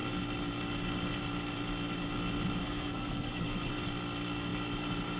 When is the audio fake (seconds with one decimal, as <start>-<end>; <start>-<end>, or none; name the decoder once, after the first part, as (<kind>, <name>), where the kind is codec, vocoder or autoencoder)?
2.6-3.7 (codec, SNAC)